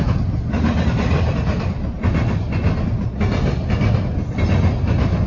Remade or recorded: recorded